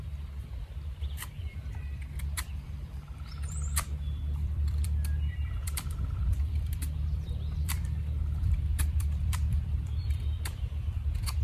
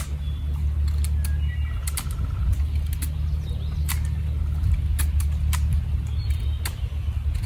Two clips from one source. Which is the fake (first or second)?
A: first